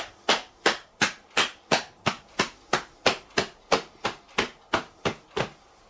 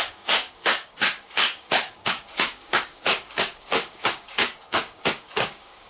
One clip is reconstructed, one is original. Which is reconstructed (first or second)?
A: second